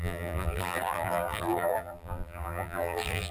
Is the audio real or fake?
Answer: fake